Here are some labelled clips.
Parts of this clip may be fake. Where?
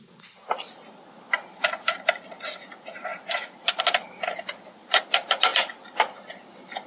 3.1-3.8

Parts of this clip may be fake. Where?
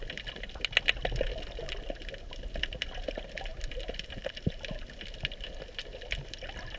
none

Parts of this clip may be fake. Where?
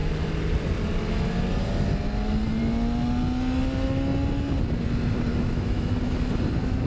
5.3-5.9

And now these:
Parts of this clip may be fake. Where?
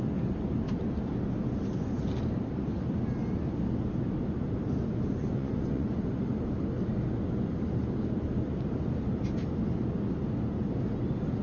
5.2-5.9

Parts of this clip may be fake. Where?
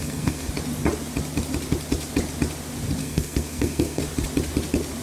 0.0-0.5; 3.0-4.0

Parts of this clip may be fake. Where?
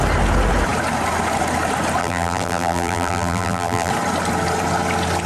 2.0-3.9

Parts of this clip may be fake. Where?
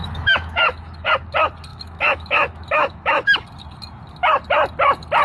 0.0-1.1; 1.7-3.4